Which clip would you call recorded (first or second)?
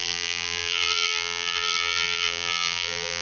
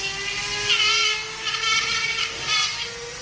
second